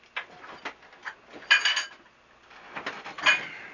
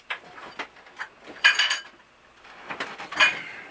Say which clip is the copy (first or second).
second